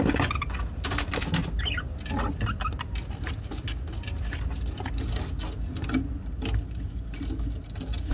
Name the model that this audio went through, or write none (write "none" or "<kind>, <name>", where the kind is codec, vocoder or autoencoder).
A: none